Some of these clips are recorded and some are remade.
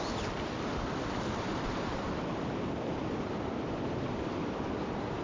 remade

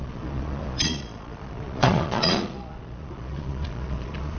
remade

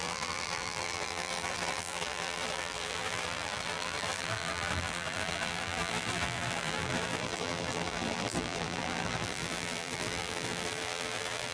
remade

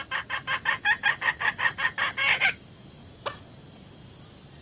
recorded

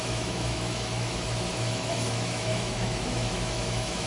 remade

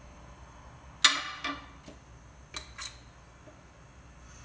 recorded